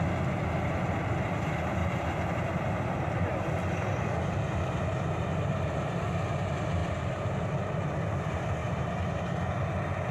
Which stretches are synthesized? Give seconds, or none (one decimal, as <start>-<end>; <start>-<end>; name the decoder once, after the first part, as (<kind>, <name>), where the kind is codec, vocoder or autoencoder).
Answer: 1.8-6.1 (vocoder, BigVGAN v2)